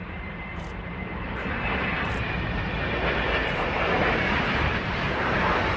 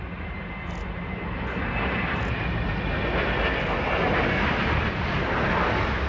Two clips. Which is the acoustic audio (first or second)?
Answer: second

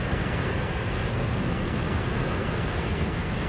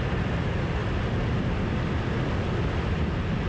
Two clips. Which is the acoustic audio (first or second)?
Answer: second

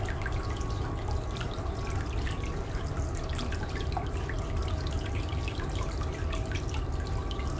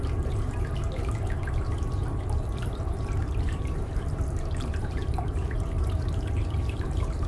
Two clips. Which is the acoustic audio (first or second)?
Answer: first